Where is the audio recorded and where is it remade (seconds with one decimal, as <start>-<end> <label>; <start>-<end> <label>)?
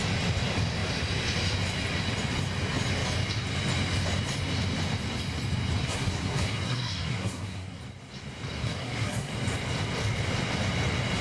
0.0-5.8 recorded; 5.8-7.8 remade; 7.8-8.6 recorded; 8.6-9.3 remade; 9.3-11.2 recorded